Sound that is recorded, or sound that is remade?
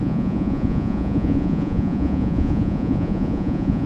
remade